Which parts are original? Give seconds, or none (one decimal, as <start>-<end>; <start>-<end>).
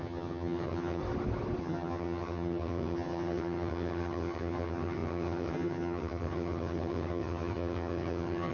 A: 1.0-1.6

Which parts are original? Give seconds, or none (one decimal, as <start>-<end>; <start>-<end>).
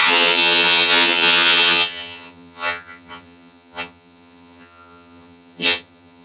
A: none